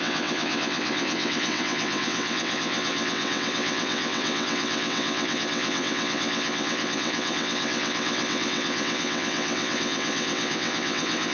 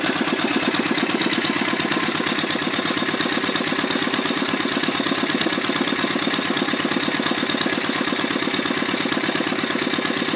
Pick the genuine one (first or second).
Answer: second